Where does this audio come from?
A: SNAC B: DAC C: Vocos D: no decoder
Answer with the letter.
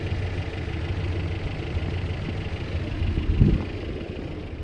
D